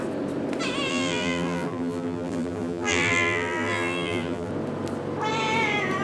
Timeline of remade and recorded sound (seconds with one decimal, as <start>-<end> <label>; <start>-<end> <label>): 0.0-0.9 recorded; 0.9-4.5 remade; 4.5-6.0 recorded